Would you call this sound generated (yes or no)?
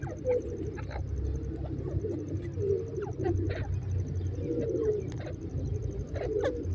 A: no